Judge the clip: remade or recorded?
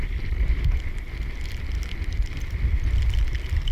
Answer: recorded